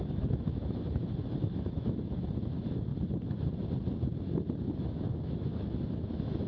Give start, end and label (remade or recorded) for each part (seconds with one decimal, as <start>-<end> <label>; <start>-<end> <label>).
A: 0.0-2.9 remade; 2.9-4.8 recorded; 4.8-6.5 remade